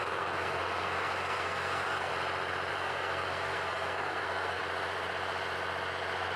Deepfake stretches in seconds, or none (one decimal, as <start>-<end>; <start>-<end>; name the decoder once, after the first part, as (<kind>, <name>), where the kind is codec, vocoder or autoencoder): 0.0-2.1 (codec, SNAC); 2.7-4.6

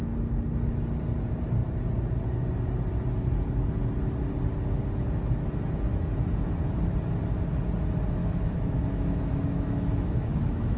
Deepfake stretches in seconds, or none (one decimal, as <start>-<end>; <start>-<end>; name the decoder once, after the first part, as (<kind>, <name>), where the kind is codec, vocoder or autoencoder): 8.2-10.8 (autoencoder, DAC-VAE)